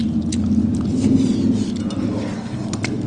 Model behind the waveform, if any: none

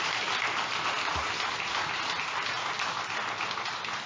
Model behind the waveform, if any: none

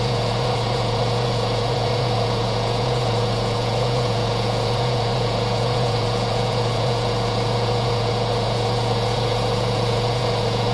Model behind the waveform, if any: vocoder, Vocos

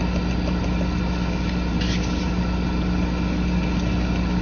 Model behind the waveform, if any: none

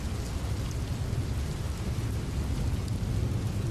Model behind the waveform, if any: none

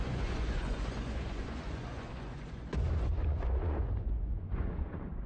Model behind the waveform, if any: vocoder, Vocos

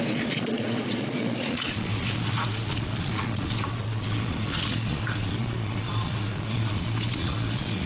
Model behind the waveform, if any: vocoder, Vocos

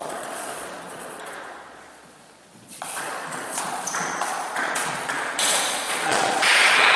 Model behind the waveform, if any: vocoder, Vocos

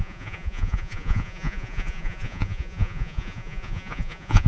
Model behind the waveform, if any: vocoder, Vocos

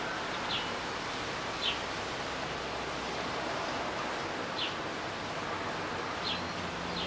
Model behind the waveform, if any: none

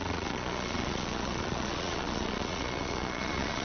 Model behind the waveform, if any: vocoder, Vocos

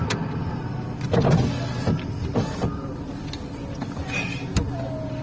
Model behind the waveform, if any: none